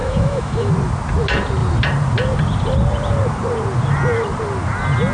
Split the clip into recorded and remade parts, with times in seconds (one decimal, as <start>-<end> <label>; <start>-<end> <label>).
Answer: 0.0-0.7 remade; 0.7-5.1 recorded